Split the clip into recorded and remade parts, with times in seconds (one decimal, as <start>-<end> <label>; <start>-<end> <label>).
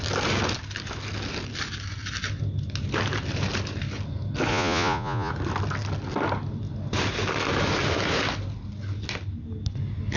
0.0-4.5 recorded; 4.5-5.3 remade; 5.3-10.2 recorded